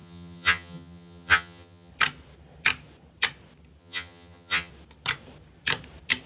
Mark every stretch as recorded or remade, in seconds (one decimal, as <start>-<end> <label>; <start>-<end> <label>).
0.0-1.9 remade; 1.9-3.8 recorded; 3.8-4.7 remade; 4.7-6.3 recorded

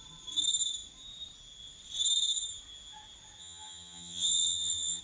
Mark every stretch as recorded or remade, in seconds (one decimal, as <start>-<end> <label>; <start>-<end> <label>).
0.0-3.4 recorded; 3.4-5.0 remade

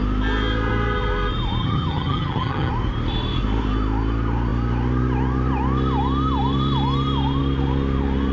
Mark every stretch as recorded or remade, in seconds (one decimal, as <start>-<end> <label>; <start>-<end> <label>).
0.0-1.6 recorded; 1.6-2.7 remade; 2.7-8.3 recorded